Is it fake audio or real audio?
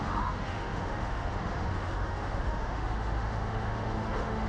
fake